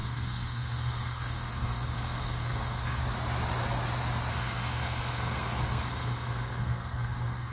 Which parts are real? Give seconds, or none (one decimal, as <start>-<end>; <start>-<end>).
3.0-4.3